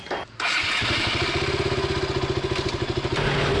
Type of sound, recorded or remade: recorded